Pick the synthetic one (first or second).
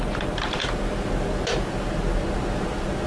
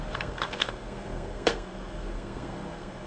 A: second